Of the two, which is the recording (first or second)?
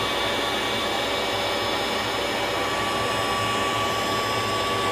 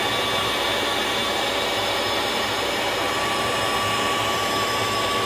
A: first